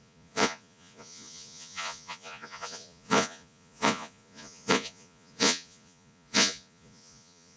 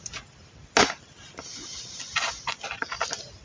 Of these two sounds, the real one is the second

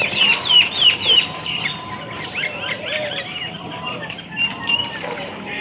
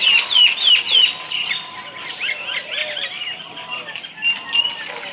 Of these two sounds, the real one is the second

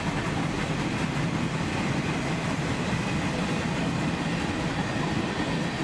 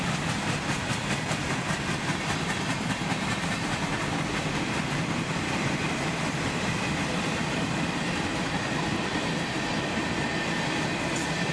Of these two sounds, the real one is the first